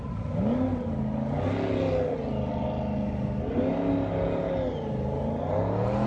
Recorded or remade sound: recorded